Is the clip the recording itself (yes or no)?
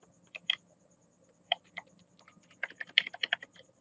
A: yes